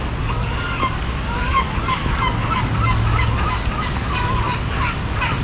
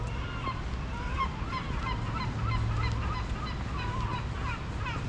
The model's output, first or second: first